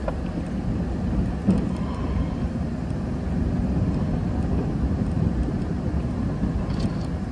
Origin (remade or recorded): recorded